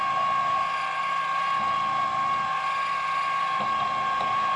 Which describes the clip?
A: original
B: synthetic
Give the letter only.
A